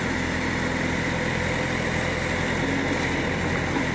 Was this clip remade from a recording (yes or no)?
no